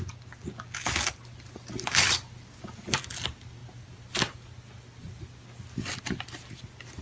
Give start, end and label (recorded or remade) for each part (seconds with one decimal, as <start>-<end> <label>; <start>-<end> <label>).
0.0-7.0 recorded

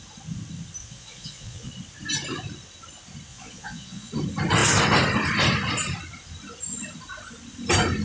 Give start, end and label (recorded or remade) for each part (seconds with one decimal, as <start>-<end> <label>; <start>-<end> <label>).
0.0-0.8 recorded; 0.8-1.7 remade; 1.7-3.3 recorded; 3.3-4.1 remade; 4.1-8.0 recorded

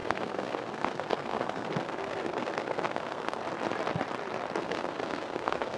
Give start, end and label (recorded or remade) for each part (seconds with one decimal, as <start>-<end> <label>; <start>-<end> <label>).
0.0-3.4 remade; 3.4-4.6 recorded; 4.6-5.8 remade

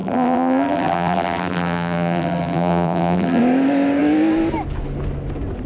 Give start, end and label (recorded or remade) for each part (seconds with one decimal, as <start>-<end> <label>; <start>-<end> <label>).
0.0-3.4 remade; 3.4-5.7 recorded